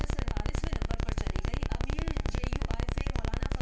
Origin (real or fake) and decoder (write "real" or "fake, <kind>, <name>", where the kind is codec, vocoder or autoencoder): real